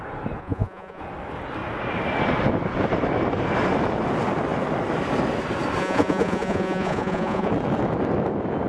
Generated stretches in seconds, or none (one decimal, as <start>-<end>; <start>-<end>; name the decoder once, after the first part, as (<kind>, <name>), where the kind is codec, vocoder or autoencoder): 0.4-1.0 (vocoder, Vocos); 5.8-7.5